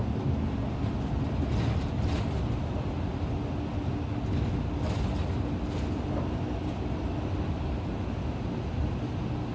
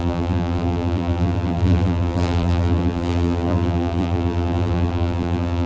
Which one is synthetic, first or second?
second